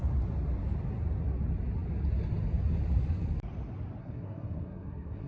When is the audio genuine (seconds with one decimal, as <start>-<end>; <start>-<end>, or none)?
0.0-4.0